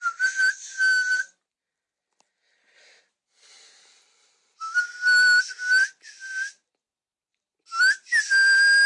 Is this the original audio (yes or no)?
yes